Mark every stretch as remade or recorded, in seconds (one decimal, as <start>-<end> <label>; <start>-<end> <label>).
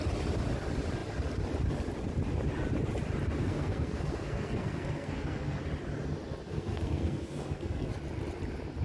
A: 0.0-3.4 recorded; 3.4-5.6 remade; 5.6-6.5 recorded; 6.5-7.9 remade; 7.9-8.8 recorded